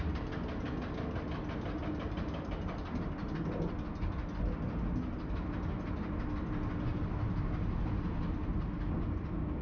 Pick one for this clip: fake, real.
real